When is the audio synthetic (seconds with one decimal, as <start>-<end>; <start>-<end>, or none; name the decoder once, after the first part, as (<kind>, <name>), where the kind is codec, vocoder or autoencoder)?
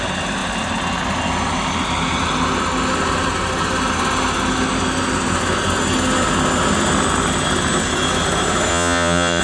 8.7-9.4 (vocoder, Vocos)